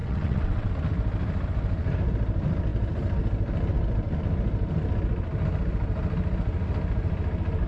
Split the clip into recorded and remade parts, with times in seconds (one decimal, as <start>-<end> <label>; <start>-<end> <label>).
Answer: 0.0-0.7 remade; 0.7-7.7 recorded